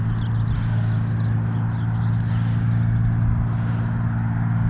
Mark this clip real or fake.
real